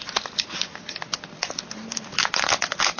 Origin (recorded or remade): recorded